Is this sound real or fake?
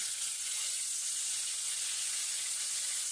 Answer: fake